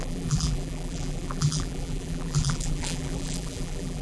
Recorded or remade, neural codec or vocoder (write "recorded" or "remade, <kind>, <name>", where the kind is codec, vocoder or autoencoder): remade, vocoder, BigVGAN v2